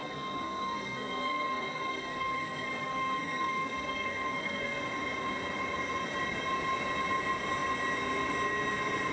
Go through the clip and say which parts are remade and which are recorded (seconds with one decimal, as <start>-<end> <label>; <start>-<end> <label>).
0.0-4.8 remade; 4.8-9.1 recorded